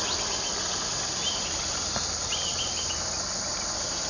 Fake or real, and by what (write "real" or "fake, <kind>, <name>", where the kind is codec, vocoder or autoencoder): real